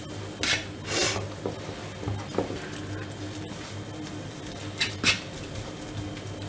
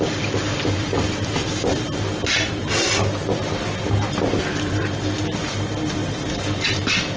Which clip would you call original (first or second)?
first